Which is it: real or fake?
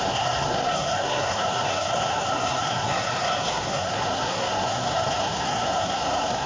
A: fake